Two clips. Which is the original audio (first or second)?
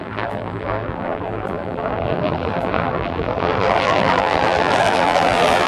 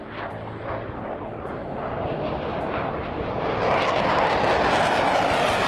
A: second